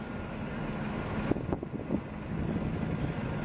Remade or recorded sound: recorded